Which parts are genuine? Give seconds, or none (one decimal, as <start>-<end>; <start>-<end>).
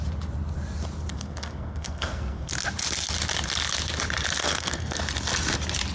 0.0-1.1; 2.5-4.4; 5.0-5.9